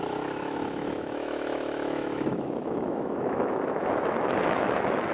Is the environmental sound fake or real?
fake